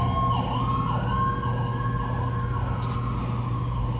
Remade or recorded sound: recorded